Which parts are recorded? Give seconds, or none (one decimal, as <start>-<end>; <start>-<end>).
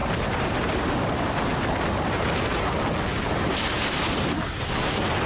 0.6-3.1; 4.4-5.3